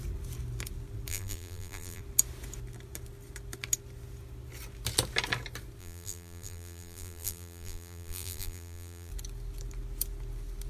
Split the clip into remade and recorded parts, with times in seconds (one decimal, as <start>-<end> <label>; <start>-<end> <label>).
0.0-1.1 recorded; 1.1-2.0 remade; 2.0-5.8 recorded; 5.8-9.1 remade; 9.1-10.7 recorded